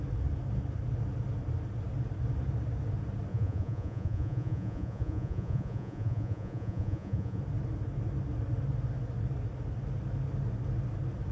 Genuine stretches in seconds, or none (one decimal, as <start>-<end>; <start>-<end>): 0.0-3.3; 7.4-11.3